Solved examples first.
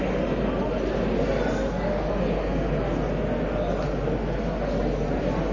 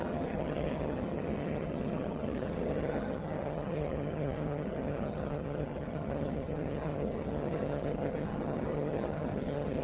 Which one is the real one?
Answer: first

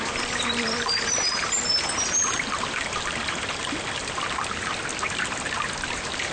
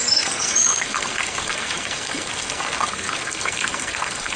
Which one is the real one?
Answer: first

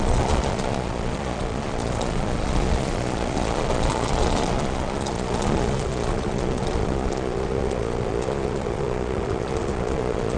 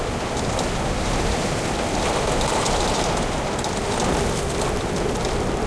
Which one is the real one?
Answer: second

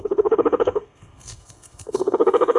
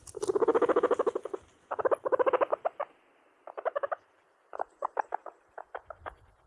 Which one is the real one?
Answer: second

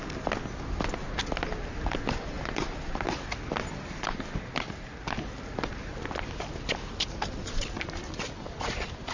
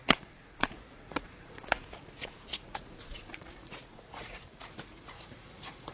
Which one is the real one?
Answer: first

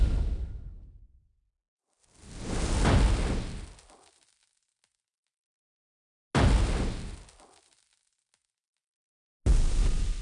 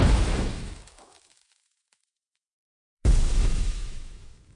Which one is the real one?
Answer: first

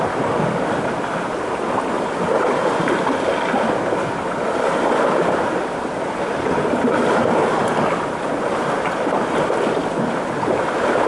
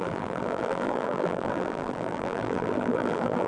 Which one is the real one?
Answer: first